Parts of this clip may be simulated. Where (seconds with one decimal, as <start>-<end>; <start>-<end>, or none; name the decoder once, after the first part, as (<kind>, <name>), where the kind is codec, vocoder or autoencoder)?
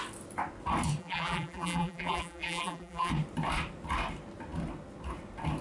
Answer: 1.0-3.1 (vocoder, BigVGAN v2)